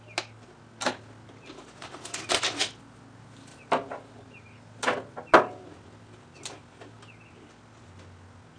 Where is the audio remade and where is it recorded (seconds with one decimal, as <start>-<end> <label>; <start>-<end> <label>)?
0.0-8.6 recorded